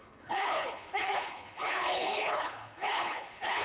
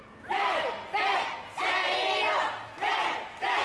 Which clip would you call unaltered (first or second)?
second